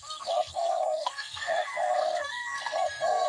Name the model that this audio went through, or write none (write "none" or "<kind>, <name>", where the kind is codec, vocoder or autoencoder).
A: codec, SNAC